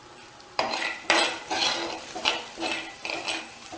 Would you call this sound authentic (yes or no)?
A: no